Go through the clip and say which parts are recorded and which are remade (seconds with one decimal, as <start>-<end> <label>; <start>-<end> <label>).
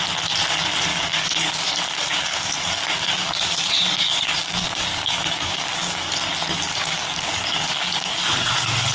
0.0-0.9 recorded; 0.9-6.1 remade; 6.1-6.7 recorded; 6.7-8.5 remade; 8.5-8.9 recorded